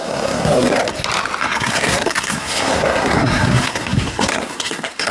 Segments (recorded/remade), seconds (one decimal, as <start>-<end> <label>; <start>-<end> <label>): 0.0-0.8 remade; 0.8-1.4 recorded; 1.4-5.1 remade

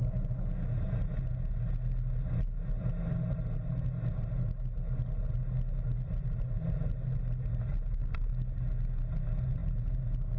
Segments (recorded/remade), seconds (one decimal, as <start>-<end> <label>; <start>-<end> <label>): 0.0-10.4 recorded

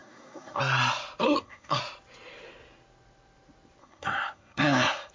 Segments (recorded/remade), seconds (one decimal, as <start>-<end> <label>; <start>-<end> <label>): 0.0-0.6 remade; 0.6-1.2 recorded; 1.2-1.8 remade; 1.8-3.8 recorded; 3.8-5.1 remade

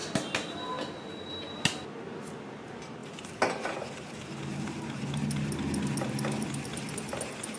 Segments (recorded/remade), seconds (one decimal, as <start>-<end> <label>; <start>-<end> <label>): 0.0-7.6 recorded

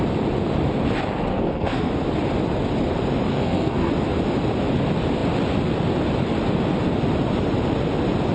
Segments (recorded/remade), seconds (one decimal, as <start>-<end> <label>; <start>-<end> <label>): 0.0-1.3 recorded; 1.3-1.9 remade; 1.9-3.3 recorded; 3.3-3.9 remade; 3.9-8.3 recorded

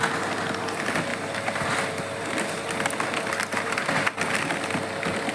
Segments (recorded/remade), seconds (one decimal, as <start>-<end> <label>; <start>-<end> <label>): 0.0-5.3 recorded

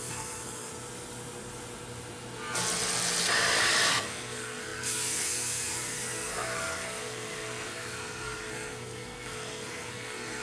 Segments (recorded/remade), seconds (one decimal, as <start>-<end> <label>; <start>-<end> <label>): 0.0-0.7 remade; 0.7-3.9 recorded; 3.9-10.4 remade